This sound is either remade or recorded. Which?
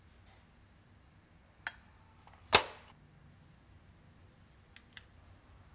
recorded